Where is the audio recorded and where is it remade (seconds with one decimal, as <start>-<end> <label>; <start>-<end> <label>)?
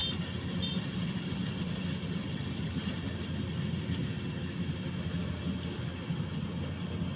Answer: 0.0-7.2 recorded